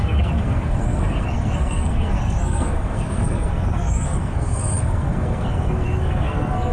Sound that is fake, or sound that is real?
fake